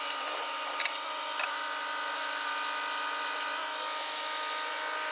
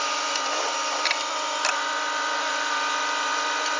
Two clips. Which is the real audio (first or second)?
first